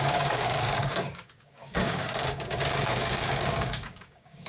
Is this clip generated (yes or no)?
yes